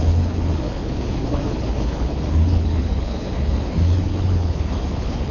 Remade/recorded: remade